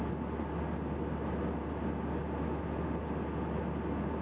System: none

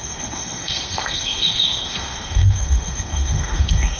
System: codec, SNAC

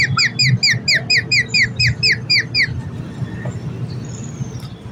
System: none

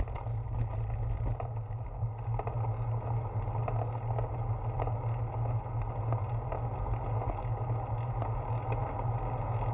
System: none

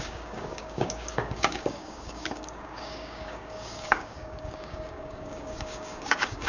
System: codec, DAC